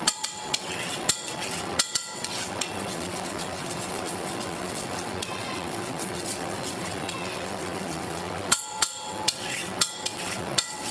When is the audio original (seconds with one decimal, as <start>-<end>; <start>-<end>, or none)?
none